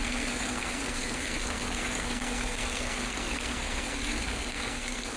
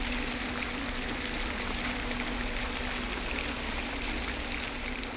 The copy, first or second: first